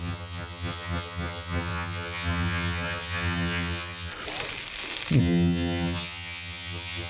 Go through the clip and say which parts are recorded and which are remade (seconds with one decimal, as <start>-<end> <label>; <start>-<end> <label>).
0.0-4.1 remade; 4.1-5.2 recorded; 5.2-7.1 remade

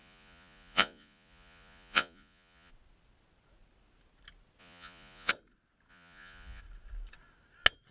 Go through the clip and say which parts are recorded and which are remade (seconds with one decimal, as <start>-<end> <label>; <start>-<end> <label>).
0.0-2.7 remade; 2.7-4.6 recorded; 4.6-5.3 remade; 5.3-5.9 recorded; 5.9-6.6 remade; 6.6-7.9 recorded